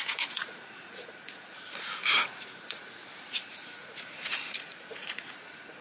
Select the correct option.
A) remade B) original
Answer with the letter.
A